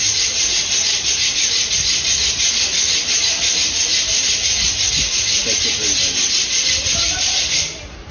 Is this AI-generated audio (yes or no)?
no